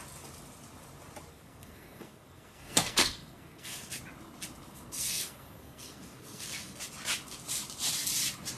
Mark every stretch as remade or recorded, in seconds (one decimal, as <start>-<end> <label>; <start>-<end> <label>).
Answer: 0.0-1.3 recorded; 1.3-4.0 remade; 4.0-4.7 recorded; 4.7-6.8 remade; 6.8-8.6 recorded